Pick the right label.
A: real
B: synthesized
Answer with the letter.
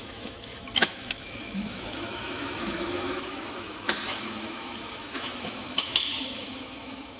B